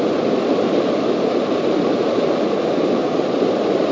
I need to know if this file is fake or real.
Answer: real